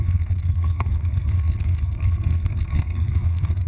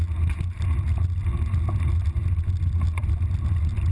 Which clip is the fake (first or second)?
first